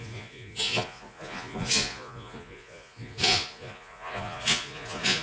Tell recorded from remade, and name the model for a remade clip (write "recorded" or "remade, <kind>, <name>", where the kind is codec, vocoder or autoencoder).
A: remade, vocoder, Vocos